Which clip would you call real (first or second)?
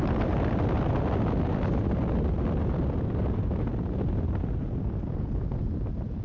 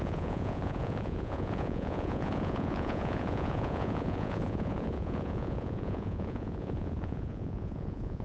first